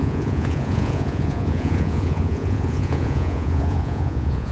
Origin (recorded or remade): remade